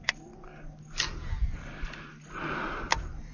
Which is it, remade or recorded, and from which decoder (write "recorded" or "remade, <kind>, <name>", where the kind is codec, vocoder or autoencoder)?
recorded